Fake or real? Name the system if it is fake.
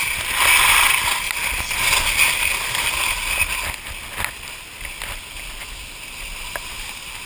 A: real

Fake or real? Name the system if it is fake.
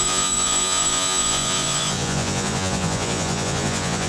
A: fake, vocoder, Vocos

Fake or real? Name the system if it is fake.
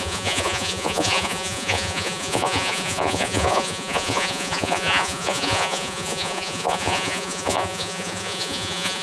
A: fake, vocoder, Vocos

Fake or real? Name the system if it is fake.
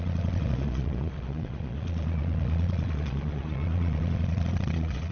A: fake, vocoder, Vocos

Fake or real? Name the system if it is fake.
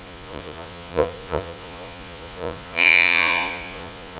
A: fake, vocoder, Vocos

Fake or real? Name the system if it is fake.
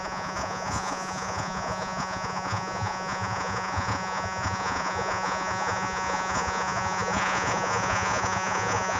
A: fake, vocoder, Vocos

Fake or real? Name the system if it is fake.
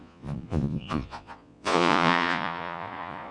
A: fake, vocoder, Vocos